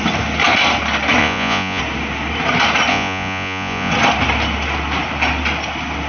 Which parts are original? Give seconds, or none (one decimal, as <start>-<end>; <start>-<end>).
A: 0.0-1.2; 1.8-2.9; 3.9-6.1